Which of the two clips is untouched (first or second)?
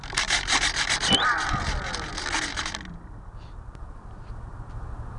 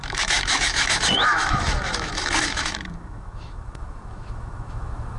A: first